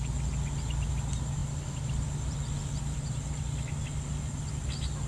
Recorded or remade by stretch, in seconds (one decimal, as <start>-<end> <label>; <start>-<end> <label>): 0.0-5.1 recorded